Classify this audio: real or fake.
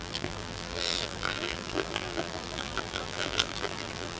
fake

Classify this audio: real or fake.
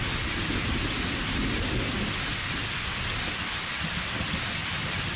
real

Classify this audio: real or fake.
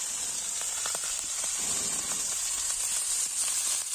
fake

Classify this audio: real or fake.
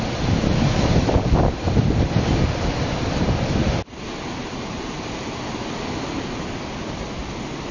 real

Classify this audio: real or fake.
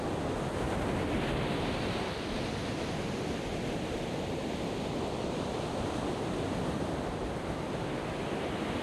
real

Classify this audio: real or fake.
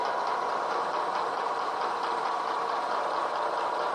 fake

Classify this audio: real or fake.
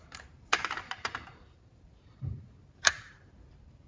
fake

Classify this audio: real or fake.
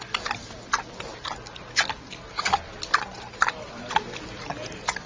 real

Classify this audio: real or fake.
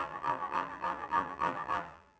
fake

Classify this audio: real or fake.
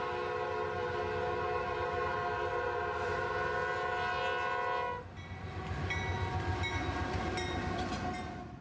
real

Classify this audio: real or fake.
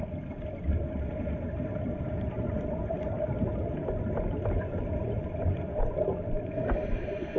real